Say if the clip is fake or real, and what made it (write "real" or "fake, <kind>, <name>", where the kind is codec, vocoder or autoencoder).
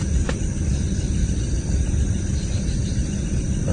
real